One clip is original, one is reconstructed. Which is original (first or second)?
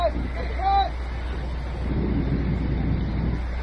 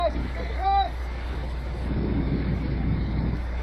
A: first